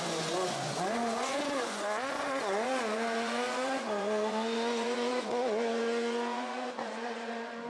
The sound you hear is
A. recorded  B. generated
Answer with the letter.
B